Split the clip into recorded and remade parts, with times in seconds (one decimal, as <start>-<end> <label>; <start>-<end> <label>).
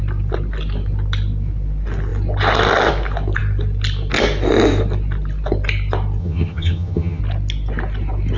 0.0-6.2 recorded; 6.2-7.2 remade; 7.2-8.4 recorded